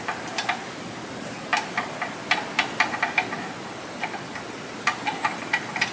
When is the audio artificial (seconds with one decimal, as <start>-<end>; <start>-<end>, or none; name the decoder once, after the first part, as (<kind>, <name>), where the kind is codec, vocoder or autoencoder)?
none